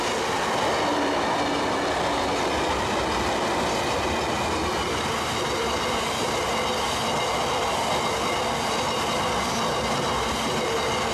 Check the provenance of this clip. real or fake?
real